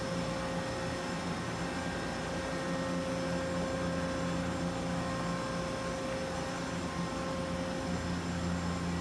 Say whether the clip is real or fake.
real